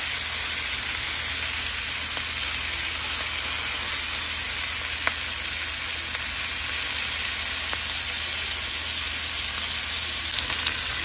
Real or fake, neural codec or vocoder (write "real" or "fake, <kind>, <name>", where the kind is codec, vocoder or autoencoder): real